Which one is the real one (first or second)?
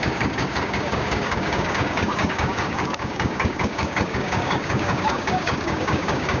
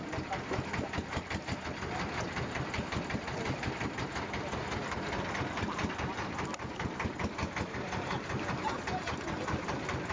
second